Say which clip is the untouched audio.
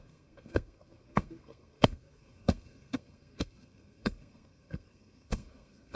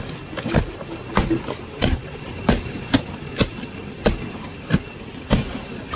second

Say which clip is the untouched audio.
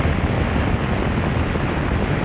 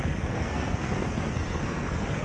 first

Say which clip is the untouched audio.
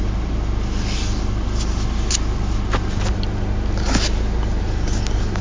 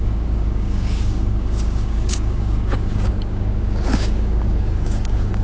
first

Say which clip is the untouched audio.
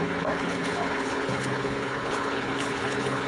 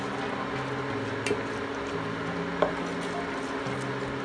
second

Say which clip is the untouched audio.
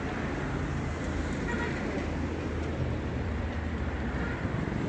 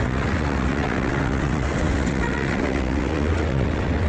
first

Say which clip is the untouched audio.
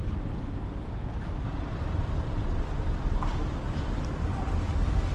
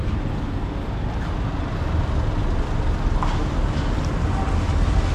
second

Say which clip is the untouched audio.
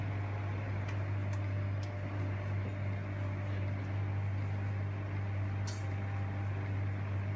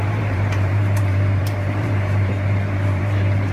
first